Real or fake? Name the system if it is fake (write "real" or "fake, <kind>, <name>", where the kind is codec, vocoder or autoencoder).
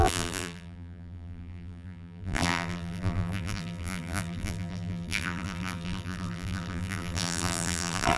fake, vocoder, BigVGAN v2